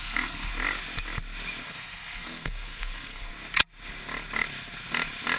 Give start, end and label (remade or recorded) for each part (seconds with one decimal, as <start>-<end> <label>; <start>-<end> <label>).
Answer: 0.0-0.5 remade; 0.5-1.6 recorded; 1.6-3.3 remade; 3.3-5.4 recorded